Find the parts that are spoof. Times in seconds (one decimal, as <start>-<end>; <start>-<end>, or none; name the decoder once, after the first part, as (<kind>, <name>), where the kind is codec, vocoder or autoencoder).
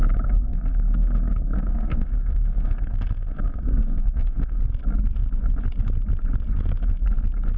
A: 0.0-4.6 (codec, SNAC)